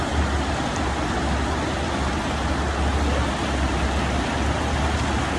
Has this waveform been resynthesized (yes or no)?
no